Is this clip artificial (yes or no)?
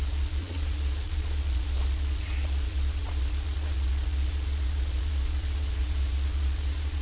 yes